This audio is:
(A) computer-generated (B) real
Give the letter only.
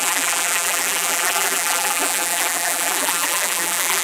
A